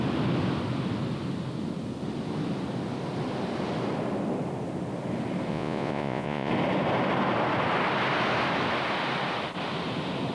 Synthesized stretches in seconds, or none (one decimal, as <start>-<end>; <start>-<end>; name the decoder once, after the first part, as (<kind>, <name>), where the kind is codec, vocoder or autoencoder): 5.5-6.5 (vocoder, Vocos)